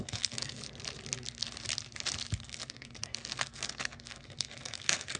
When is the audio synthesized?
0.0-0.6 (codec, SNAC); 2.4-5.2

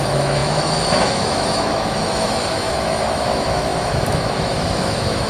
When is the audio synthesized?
0.0-5.3 (autoencoder, DAC-VAE)

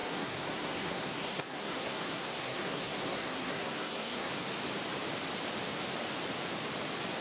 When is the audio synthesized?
0.0-4.3 (codec, SNAC)